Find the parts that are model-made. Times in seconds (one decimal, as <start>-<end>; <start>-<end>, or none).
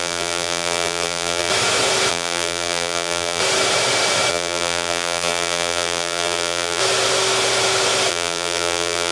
0.0-1.5; 2.1-3.4; 4.3-6.8; 8.1-9.1